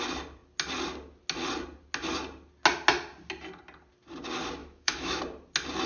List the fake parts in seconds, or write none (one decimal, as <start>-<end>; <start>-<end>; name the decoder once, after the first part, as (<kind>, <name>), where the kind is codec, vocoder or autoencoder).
4.6-5.2 (autoencoder, DAC-VAE)